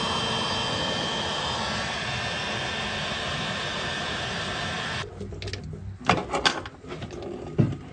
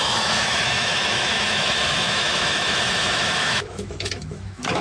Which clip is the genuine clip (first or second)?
first